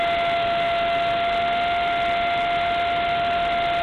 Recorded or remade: recorded